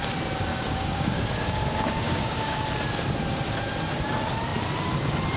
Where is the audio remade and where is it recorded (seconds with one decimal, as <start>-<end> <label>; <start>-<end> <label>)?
0.0-0.5 recorded; 0.5-2.6 remade; 2.6-5.4 recorded